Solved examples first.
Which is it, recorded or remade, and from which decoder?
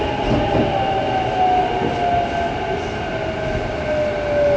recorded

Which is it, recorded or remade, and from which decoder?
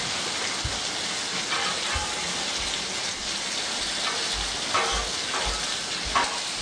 recorded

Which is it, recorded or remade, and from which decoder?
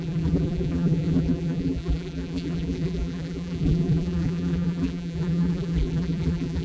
remade, vocoder, BigVGAN v2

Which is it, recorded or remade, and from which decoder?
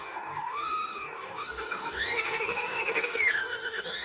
remade, codec, DAC